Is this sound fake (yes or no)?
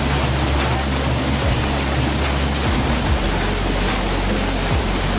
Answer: no